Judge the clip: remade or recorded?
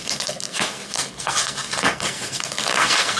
remade